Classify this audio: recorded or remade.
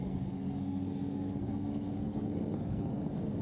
remade